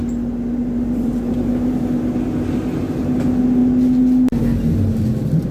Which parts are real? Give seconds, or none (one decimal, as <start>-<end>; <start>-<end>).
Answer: 0.0-0.6; 1.8-5.5